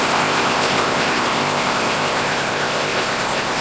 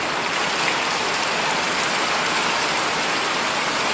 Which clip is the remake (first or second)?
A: first